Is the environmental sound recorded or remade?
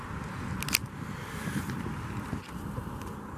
recorded